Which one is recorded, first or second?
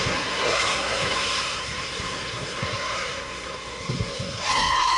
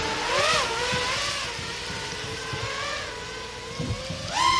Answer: second